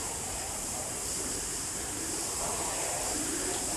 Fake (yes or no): yes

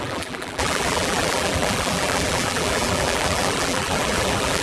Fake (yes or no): yes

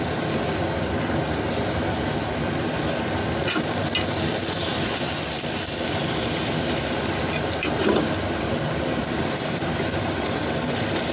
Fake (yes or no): yes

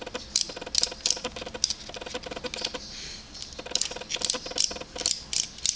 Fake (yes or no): no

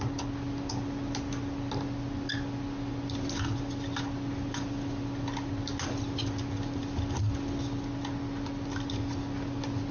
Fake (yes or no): no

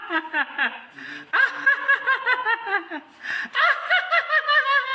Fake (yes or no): no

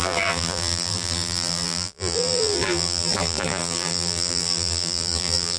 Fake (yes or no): yes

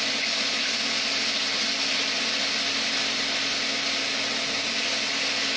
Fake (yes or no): no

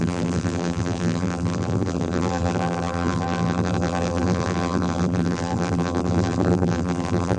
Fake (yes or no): yes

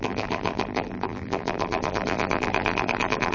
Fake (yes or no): yes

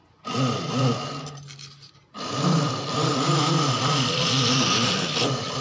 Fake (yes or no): yes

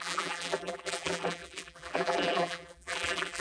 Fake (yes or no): yes